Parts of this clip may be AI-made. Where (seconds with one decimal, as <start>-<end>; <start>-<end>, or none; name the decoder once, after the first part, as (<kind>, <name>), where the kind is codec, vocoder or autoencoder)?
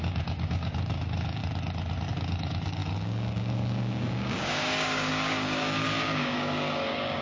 0.0-1.4 (codec, DAC); 2.1-7.2